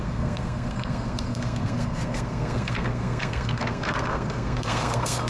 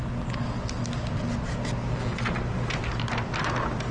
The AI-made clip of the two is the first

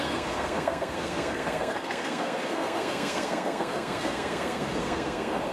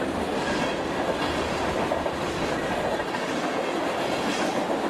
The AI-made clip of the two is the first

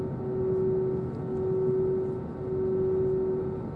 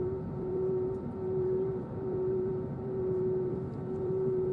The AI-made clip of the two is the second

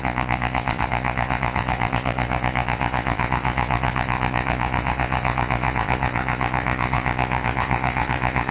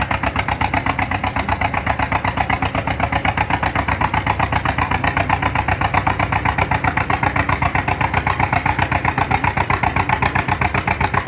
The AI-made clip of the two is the first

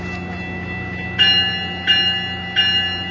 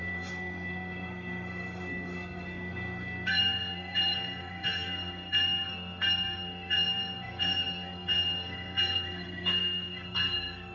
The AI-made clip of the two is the second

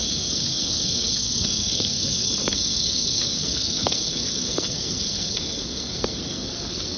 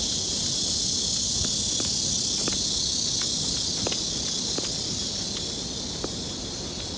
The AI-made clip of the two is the first